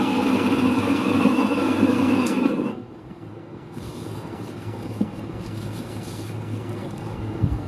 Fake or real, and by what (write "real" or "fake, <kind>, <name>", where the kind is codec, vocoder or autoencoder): fake, codec, SNAC